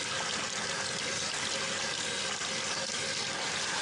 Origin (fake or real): real